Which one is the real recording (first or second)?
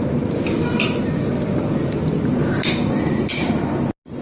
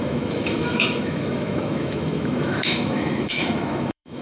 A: first